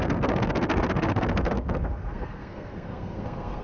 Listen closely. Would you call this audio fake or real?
fake